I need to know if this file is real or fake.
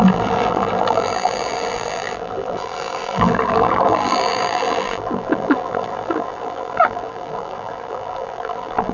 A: fake